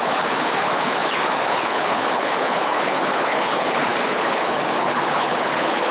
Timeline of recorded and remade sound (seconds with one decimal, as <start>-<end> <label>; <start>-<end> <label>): 0.0-5.9 remade